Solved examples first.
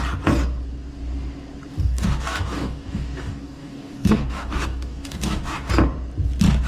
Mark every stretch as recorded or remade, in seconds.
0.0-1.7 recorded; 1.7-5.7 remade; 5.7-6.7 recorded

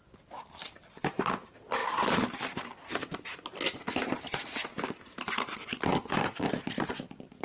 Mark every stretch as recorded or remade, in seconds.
0.0-5.9 recorded; 5.9-6.5 remade; 6.5-7.4 recorded

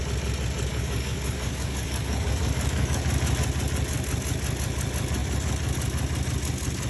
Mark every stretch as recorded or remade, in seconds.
0.0-0.7 recorded; 0.7-3.0 remade; 3.0-6.9 recorded

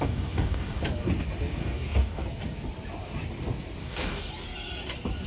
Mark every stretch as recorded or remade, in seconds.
0.0-0.8 remade; 0.8-1.6 recorded; 1.6-2.2 remade; 2.2-3.8 recorded; 3.8-4.3 remade; 4.3-5.3 recorded

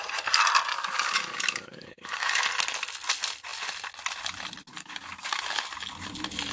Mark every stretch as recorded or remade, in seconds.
0.0-0.7 recorded; 0.7-2.4 remade; 2.4-4.7 recorded; 4.7-5.4 remade; 5.4-6.5 recorded